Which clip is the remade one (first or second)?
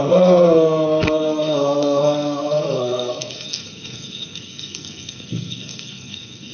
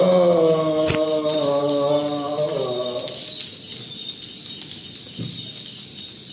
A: first